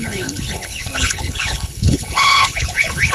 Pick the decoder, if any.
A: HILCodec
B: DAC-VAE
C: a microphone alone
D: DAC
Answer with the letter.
A